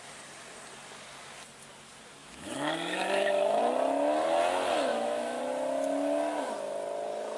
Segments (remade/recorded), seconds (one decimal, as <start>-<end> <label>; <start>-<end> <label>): 0.0-2.2 recorded; 2.2-3.6 remade; 3.6-4.9 recorded; 4.9-5.4 remade; 5.4-7.4 recorded